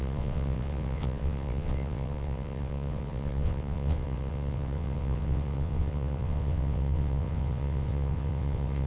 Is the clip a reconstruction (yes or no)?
yes